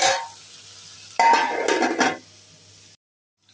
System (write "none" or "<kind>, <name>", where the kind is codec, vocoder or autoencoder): none